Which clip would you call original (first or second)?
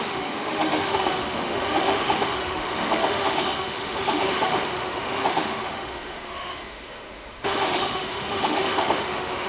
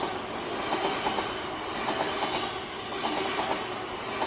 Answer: second